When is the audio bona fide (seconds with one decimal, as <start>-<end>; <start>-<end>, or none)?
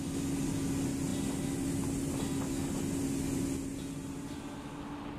0.0-5.2